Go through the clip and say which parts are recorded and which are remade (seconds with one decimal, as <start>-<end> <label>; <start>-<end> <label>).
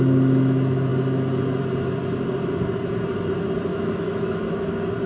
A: 0.0-3.7 recorded; 3.7-4.4 remade; 4.4-5.1 recorded